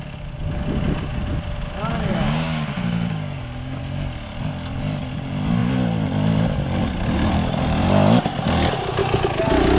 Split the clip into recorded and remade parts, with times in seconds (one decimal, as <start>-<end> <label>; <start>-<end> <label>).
0.0-1.9 recorded; 1.9-3.8 remade; 3.8-9.8 recorded